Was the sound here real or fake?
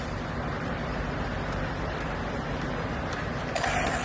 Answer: real